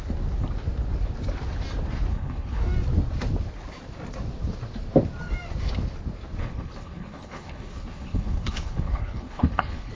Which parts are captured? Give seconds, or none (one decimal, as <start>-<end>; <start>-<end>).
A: 0.0-2.1; 2.6-6.4